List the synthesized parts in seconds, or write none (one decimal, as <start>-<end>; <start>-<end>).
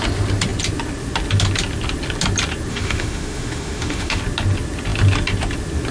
2.7-4.2